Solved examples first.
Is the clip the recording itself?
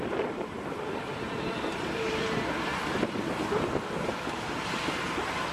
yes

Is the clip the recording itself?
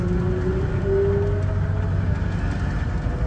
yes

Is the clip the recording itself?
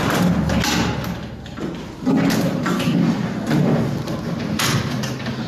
yes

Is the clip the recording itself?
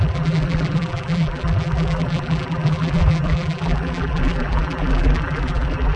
no